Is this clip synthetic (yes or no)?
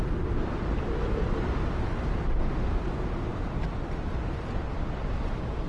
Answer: no